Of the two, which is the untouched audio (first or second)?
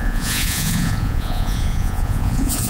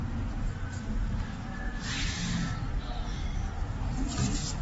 second